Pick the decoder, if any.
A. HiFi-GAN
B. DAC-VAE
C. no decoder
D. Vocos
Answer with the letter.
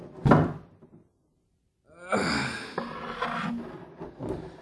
C